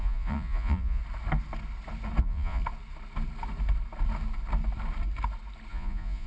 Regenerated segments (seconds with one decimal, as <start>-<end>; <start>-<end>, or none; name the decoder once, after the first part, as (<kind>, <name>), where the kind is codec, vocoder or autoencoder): 0.0-1.0 (vocoder, Vocos); 2.2-2.6; 5.7-6.3